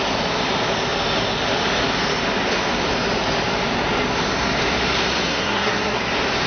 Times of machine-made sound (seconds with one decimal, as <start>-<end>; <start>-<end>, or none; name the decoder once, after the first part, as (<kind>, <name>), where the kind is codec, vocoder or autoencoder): 5.3-6.0 (codec, SNAC)